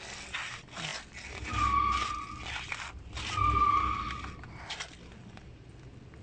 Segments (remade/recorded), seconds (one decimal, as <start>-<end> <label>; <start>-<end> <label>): 0.0-6.2 recorded